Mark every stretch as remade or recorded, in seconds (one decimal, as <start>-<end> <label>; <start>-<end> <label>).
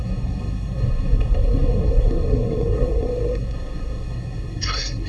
0.0-5.1 remade